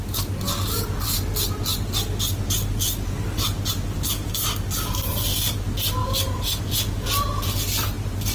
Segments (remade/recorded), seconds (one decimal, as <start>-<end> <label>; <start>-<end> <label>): 0.0-8.3 recorded